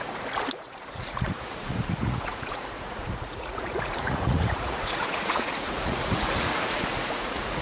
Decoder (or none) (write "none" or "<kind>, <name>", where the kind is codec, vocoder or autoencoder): vocoder, Vocos